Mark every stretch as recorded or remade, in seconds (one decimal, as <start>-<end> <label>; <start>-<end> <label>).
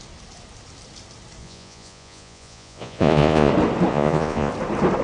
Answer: 0.0-1.4 recorded; 1.4-3.5 remade; 3.5-3.9 recorded; 3.9-4.5 remade; 4.5-5.0 recorded